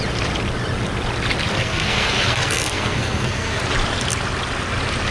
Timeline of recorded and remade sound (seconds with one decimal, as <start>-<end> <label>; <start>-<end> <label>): 0.0-1.5 recorded; 1.5-3.6 remade; 3.6-5.1 recorded